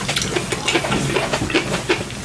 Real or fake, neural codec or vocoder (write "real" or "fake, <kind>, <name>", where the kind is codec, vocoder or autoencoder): real